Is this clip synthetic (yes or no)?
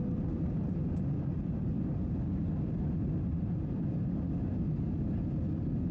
no